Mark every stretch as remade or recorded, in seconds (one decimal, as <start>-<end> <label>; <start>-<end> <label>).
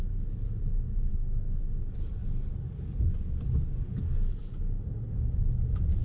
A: 0.0-1.1 recorded; 1.1-1.6 remade; 1.6-6.0 recorded